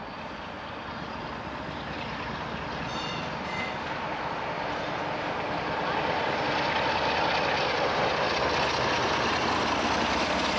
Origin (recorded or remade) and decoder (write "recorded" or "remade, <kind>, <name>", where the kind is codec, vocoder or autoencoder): recorded